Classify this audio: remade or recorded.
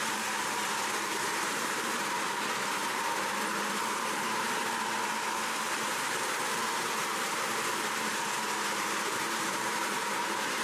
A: remade